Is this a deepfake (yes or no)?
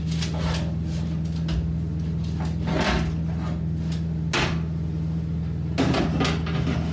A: no